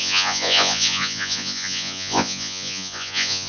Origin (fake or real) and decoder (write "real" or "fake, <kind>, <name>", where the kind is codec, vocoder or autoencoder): fake, vocoder, Vocos